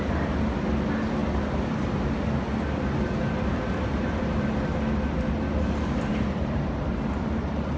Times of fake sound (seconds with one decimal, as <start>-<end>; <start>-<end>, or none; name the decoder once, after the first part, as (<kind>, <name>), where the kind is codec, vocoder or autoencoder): 3.9-4.7 (vocoder, BigVGAN v2); 6.1-7.8